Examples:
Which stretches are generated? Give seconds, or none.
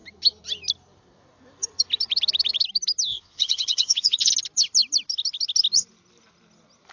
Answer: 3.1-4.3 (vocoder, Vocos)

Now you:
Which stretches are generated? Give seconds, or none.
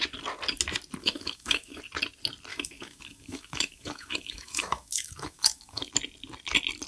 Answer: 1.0-1.8 (autoencoder, DAC-VAE); 2.5-5.9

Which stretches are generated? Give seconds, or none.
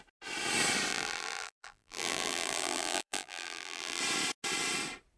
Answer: 0.9-4.0 (vocoder, BigVGAN v2)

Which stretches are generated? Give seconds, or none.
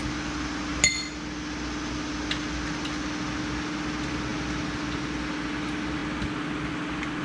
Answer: none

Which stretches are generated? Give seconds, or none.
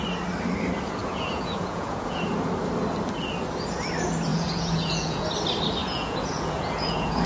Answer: 1.0-2.2 (vocoder, Vocos); 4.3-5.3; 5.8-7.3